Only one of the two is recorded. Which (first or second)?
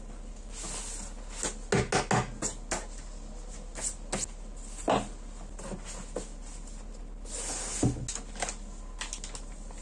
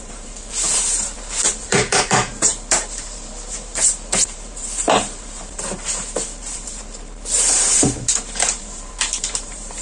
first